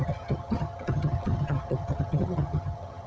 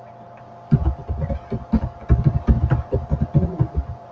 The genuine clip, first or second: second